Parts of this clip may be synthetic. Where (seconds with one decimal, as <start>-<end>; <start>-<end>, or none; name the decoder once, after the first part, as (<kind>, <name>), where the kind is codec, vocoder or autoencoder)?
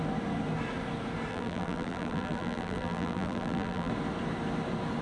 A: 1.3-3.9 (vocoder, BigVGAN v2)